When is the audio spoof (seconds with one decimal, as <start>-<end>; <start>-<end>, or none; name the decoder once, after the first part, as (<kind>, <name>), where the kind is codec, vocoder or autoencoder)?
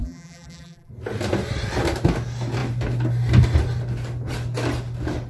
0.0-0.9 (vocoder, BigVGAN v2)